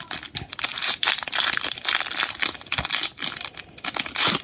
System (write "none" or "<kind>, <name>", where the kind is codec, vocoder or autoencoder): none